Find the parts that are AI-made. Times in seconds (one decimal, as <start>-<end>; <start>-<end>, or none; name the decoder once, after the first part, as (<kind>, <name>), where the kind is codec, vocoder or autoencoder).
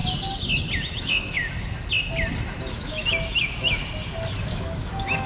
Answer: 1.0-1.4 (autoencoder, DAC-VAE); 2.7-3.8; 4.5-5.3